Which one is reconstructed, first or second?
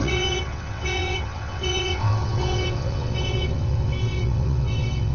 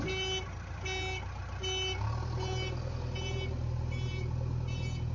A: first